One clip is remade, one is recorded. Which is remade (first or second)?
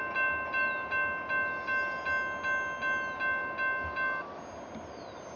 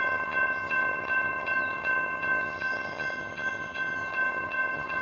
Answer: second